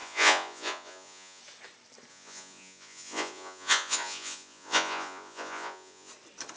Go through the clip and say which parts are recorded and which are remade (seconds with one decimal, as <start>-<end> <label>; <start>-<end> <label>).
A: 0.0-1.4 remade; 1.4-2.1 recorded; 2.1-6.1 remade; 6.1-6.6 recorded